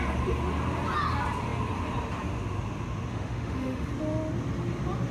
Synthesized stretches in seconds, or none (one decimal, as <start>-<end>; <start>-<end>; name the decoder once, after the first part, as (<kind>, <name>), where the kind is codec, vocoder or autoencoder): 3.1-3.9 (autoencoder, DAC-VAE)